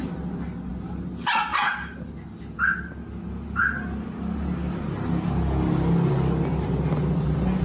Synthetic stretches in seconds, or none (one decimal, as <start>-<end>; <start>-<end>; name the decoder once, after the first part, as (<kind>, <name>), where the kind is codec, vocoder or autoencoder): none